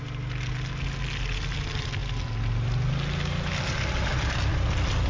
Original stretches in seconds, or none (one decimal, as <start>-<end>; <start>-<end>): 0.0-5.1